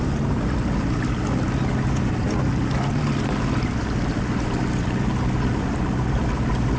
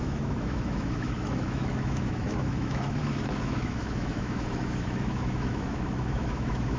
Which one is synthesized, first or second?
second